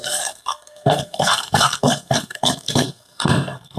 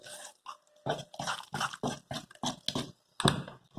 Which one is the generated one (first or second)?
first